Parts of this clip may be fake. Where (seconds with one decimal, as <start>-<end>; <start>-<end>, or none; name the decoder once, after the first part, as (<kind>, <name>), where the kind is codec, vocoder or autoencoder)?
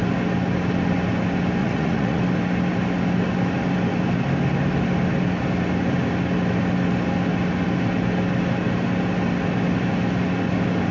1.6-2.2 (vocoder, Vocos)